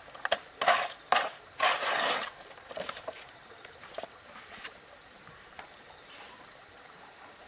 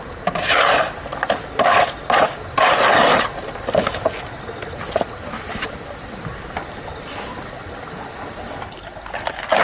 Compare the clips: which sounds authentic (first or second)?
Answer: second